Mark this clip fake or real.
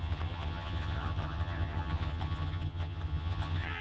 fake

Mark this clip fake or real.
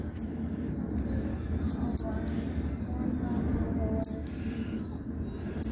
real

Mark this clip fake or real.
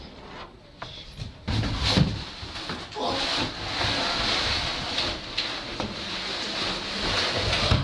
real